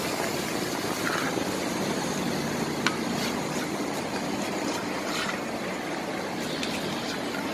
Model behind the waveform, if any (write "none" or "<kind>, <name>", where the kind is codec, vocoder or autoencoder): none